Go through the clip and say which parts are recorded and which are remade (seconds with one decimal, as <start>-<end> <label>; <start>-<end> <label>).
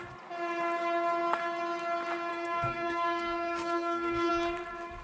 0.0-2.3 recorded; 2.3-4.3 remade; 4.3-5.0 recorded